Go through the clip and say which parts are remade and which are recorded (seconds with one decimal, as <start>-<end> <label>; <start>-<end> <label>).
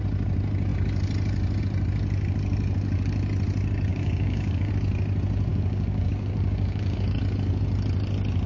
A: 0.0-3.9 recorded; 3.9-4.7 remade; 4.7-5.5 recorded; 5.5-7.2 remade; 7.2-8.5 recorded